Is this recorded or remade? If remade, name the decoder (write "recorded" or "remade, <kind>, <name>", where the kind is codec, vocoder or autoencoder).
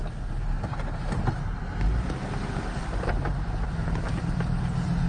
recorded